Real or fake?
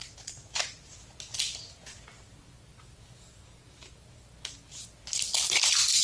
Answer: real